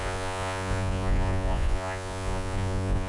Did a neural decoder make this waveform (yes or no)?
yes